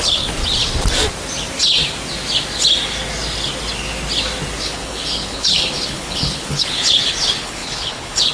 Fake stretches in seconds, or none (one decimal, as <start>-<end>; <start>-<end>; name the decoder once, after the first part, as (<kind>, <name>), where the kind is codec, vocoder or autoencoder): 0.0-0.4 (codec, HILCodec); 4.6-8.3